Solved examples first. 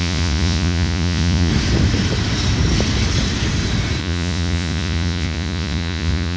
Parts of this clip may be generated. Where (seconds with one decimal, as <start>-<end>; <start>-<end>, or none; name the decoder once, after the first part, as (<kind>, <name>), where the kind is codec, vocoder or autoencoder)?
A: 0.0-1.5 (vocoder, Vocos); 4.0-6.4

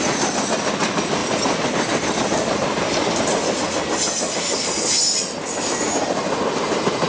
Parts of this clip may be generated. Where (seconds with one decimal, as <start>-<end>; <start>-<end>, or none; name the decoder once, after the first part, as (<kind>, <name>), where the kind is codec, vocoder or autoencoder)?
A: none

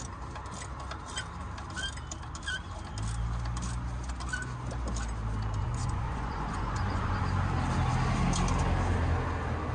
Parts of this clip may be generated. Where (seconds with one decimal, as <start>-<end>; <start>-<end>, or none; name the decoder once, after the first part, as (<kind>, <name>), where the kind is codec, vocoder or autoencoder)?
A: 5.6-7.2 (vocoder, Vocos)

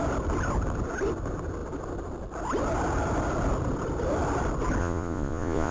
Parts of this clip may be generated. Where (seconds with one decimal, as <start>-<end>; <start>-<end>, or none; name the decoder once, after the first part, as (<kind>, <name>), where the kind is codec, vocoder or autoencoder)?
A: 4.8-5.7 (vocoder, Vocos)

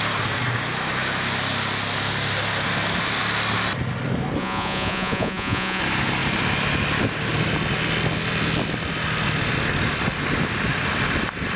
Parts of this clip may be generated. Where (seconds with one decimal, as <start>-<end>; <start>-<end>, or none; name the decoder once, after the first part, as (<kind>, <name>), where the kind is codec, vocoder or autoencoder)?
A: 4.4-5.8 (vocoder, Vocos)

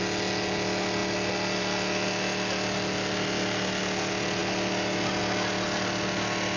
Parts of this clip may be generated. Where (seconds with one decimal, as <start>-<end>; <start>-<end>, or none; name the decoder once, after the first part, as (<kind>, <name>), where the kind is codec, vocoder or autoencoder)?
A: none

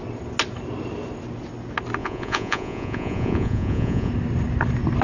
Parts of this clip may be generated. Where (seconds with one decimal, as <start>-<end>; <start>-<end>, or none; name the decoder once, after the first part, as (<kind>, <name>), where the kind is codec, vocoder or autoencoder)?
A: 2.0-4.1 (vocoder, Vocos)